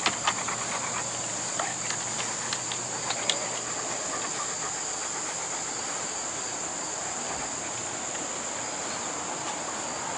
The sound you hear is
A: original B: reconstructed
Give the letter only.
A